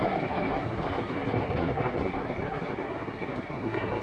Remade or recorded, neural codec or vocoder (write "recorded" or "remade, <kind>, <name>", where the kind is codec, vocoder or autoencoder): remade, codec, SNAC